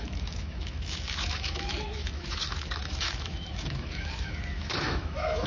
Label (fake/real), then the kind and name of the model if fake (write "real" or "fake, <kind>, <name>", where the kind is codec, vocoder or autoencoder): fake, autoencoder, DAC-VAE